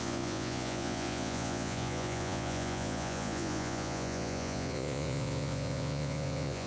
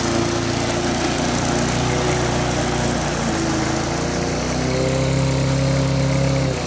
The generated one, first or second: first